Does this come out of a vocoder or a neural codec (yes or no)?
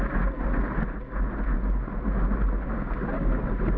no